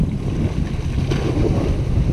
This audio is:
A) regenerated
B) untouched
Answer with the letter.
B